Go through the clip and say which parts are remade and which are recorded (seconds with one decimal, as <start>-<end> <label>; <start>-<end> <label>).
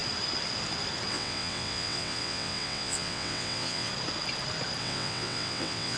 0.0-1.1 recorded; 1.1-3.9 remade; 3.9-4.8 recorded; 4.8-6.0 remade